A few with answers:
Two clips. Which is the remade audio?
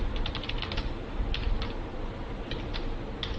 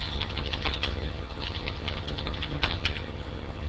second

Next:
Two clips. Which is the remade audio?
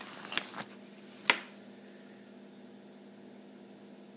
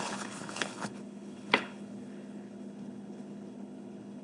second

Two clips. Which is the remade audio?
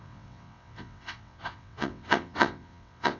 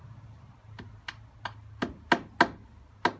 first